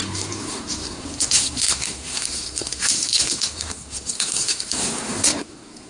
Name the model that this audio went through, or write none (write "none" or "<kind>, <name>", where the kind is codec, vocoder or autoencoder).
codec, SNAC